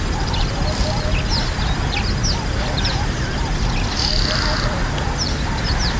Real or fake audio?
real